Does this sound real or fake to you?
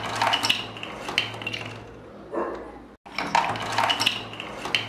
real